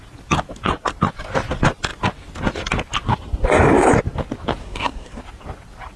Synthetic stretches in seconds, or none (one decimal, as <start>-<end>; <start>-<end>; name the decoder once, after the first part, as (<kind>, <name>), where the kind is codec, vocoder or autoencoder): 4.6-5.2 (codec, SNAC)